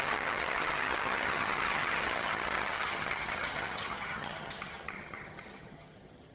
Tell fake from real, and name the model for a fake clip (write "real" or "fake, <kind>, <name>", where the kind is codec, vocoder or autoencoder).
fake, vocoder, HiFi-GAN